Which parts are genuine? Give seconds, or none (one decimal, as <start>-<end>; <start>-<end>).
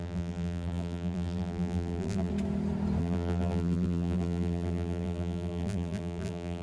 2.3-3.0